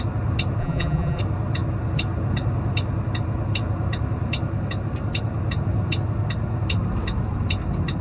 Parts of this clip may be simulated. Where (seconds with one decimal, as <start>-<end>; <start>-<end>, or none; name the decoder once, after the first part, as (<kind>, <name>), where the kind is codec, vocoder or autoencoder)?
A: 0.6-1.2 (vocoder, BigVGAN v2)